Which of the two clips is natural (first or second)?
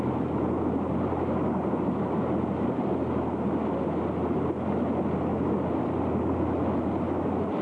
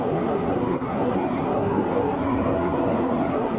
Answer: first